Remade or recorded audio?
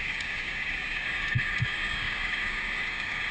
remade